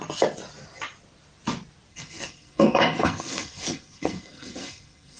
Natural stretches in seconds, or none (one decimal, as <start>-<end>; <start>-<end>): 0.0-1.9